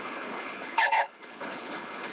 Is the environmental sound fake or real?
fake